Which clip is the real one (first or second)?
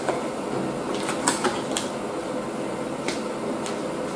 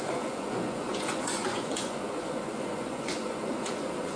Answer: first